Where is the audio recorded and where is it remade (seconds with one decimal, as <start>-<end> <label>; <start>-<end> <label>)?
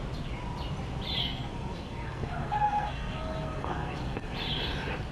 0.0-1.2 recorded; 1.2-4.3 remade; 4.3-5.1 recorded